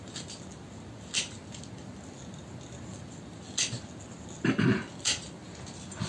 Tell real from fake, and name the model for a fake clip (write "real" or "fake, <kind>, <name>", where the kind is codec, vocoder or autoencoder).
real